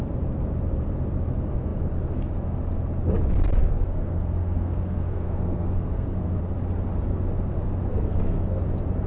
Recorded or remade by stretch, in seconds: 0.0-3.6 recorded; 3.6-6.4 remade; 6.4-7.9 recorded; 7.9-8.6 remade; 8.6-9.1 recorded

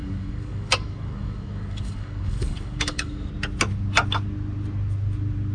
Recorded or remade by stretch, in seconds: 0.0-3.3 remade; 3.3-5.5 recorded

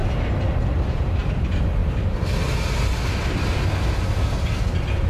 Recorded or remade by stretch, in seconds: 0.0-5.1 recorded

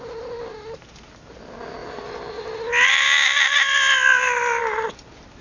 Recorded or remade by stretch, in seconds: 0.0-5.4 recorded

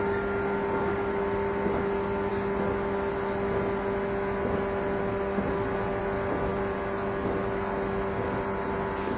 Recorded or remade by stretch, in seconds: 0.0-9.2 recorded